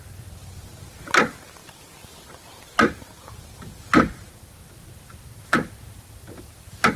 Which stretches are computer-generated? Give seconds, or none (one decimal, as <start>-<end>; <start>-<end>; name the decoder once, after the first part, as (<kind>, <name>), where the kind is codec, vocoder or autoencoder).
none